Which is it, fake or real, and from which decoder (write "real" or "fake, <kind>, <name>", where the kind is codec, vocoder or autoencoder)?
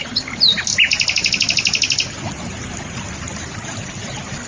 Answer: real